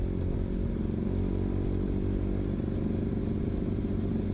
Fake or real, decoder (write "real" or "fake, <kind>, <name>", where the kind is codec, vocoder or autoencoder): real